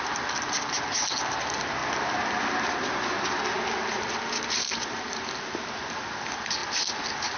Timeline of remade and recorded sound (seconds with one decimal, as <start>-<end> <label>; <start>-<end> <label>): 0.0-7.4 recorded